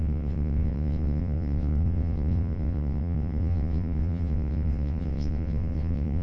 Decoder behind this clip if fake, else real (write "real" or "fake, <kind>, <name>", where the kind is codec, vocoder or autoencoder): fake, vocoder, WaveNeXt